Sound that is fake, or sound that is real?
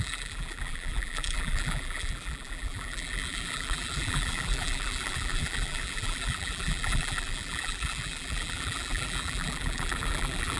fake